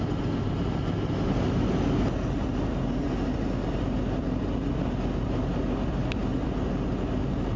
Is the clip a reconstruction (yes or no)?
no